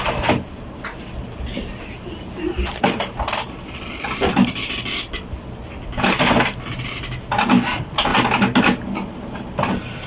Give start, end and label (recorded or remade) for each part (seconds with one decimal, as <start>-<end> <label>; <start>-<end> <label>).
0.0-10.1 recorded